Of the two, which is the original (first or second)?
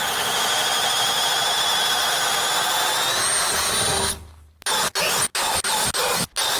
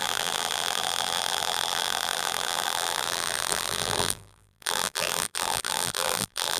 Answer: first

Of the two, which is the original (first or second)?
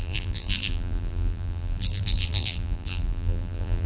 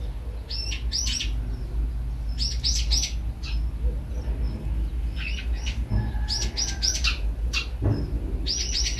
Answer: second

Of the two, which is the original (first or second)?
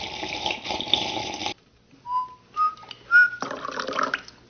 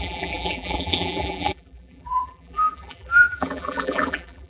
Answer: first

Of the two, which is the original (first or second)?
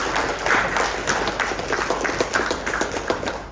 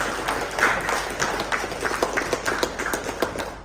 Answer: second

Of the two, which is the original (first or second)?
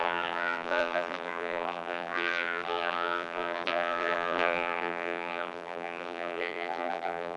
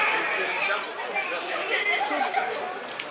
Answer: second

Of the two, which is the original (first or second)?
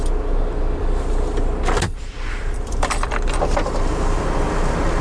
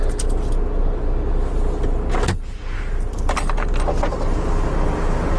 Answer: second